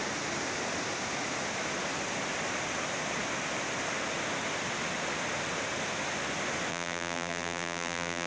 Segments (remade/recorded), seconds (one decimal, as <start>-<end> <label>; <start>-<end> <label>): 0.0-6.7 recorded; 6.7-8.3 remade